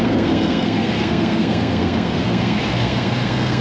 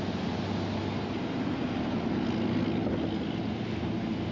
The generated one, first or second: first